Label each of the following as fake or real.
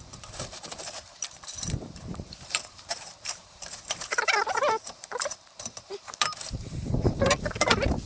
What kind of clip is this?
fake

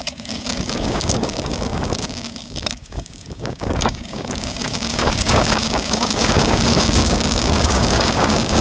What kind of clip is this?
fake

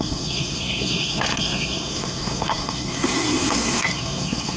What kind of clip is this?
fake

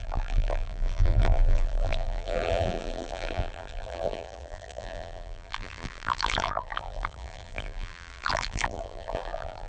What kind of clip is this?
fake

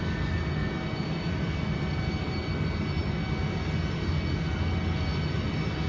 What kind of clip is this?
real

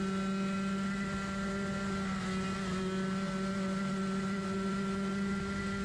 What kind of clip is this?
real